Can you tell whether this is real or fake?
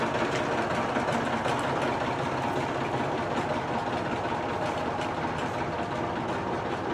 real